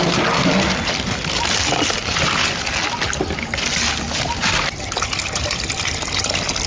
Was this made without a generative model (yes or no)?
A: yes